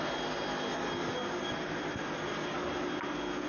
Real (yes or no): yes